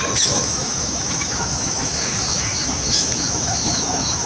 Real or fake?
fake